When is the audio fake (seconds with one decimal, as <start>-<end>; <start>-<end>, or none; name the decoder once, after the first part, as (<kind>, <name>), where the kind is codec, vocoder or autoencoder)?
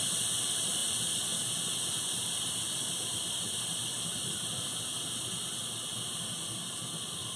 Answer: 0.0-0.8 (vocoder, BigVGAN v2); 1.9-4.7; 5.4-5.9; 6.7-7.4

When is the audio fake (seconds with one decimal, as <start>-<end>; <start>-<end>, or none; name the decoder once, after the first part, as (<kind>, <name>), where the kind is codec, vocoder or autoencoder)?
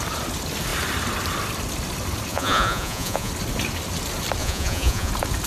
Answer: 2.3-3.3 (vocoder, Vocos); 4.4-5.1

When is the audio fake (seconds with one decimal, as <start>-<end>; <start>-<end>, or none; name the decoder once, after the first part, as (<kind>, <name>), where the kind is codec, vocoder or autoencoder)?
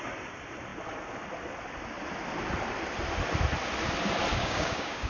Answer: 4.3-5.1 (codec, DAC)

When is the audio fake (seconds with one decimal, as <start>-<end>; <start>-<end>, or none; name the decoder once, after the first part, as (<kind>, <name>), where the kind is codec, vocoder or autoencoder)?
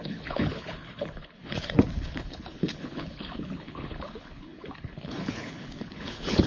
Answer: 0.0-6.5 (codec, HILCodec)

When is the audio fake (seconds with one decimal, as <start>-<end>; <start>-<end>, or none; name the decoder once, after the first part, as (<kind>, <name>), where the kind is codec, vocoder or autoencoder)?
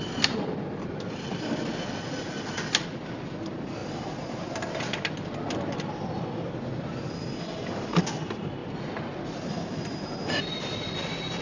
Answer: 3.8-4.8 (vocoder, BigVGAN v2); 8.6-10.4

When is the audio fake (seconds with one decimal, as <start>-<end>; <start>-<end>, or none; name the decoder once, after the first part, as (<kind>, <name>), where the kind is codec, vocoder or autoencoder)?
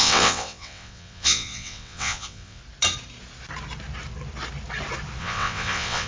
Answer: 0.0-2.6 (vocoder, WaveNeXt); 5.2-6.1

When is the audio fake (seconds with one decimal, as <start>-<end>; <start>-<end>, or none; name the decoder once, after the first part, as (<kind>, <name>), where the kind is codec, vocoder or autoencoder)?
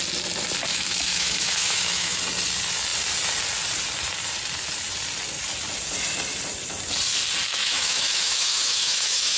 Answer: 0.7-2.2 (autoencoder, DAC-VAE); 7.5-9.4